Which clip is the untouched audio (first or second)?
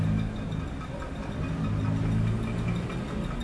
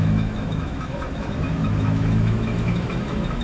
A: first